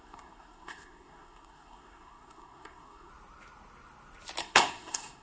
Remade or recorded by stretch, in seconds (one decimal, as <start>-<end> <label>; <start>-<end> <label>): 0.0-3.1 remade; 3.1-4.4 recorded; 4.4-5.2 remade